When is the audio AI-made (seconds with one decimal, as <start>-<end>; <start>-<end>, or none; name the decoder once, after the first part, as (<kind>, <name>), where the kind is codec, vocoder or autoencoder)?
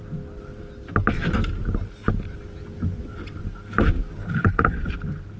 4.2-4.9 (codec, HILCodec)